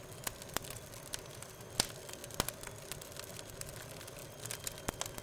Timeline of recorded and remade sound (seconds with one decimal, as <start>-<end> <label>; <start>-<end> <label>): 0.0-5.2 recorded